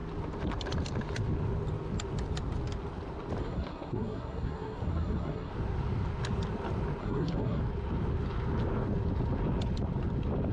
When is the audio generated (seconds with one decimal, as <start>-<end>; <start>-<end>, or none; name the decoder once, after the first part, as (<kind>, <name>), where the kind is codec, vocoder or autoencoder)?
3.4-5.5 (codec, SNAC); 7.0-7.6